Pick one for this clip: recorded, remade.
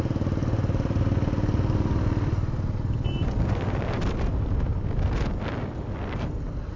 recorded